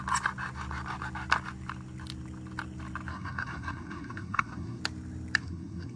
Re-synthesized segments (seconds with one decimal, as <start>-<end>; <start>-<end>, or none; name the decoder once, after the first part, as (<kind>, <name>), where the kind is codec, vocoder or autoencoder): 3.1-4.8 (codec, SNAC); 5.4-6.0